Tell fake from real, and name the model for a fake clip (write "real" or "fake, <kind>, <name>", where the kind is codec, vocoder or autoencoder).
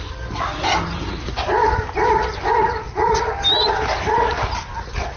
real